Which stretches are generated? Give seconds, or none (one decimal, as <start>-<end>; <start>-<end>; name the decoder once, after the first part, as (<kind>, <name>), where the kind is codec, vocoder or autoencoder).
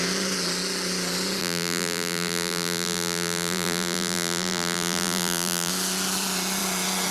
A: 1.4-5.7 (vocoder, BigVGAN v2)